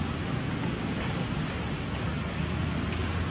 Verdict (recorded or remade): recorded